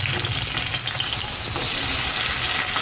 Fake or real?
real